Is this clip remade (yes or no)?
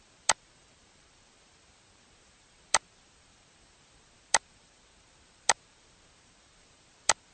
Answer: yes